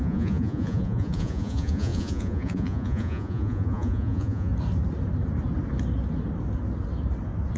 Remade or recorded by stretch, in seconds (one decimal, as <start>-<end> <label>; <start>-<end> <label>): 0.0-4.5 remade; 4.5-7.6 recorded